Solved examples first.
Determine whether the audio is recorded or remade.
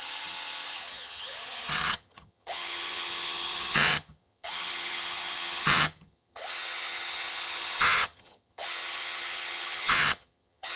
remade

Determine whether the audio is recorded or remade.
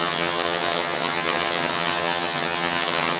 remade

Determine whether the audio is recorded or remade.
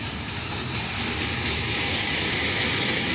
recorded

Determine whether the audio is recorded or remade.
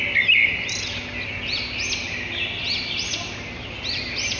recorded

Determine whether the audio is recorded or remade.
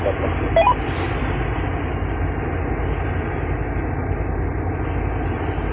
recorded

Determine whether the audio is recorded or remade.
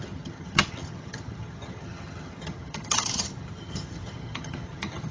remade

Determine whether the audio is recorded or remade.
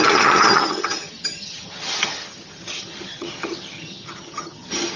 remade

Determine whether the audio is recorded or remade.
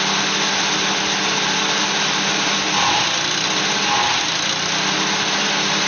recorded